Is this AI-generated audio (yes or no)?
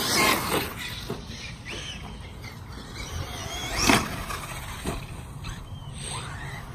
no